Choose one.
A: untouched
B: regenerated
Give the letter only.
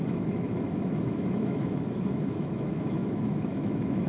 B